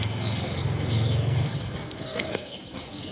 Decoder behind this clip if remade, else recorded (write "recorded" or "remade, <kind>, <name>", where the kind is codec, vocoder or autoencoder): remade, codec, SNAC